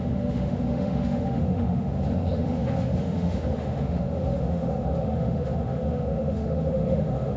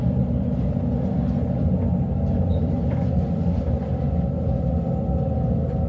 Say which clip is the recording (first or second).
second